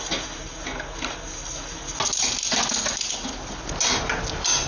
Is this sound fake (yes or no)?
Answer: no